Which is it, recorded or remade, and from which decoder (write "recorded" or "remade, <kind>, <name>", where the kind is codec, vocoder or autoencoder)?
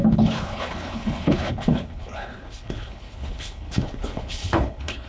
remade, codec, HILCodec